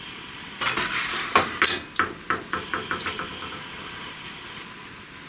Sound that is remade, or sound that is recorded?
recorded